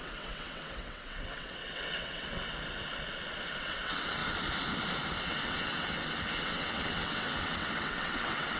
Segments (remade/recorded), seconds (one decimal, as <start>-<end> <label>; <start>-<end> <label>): 0.0-2.5 remade; 2.5-3.6 recorded; 3.6-4.2 remade; 4.2-5.2 recorded; 5.2-8.6 remade